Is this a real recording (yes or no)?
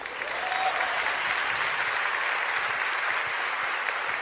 yes